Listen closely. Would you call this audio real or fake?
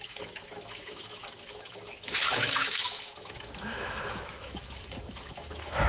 fake